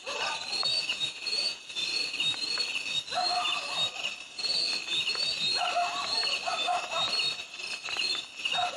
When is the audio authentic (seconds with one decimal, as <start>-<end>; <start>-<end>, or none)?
0.0-0.9; 1.6-8.8